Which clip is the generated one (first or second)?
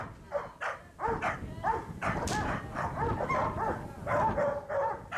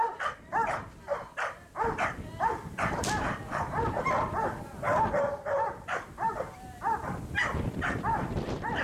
second